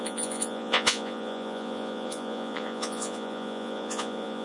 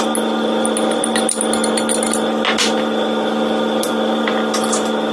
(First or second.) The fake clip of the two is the first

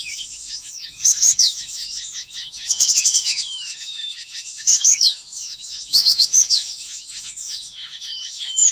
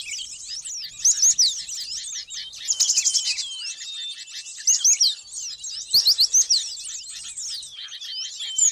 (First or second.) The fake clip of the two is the first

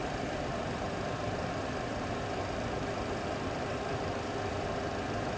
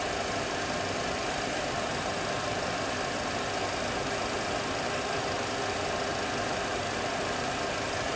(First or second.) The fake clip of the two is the first